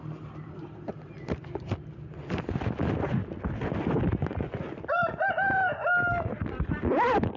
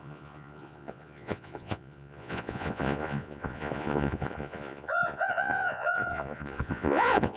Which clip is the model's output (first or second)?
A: second